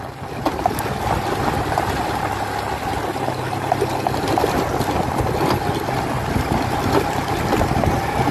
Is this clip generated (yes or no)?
no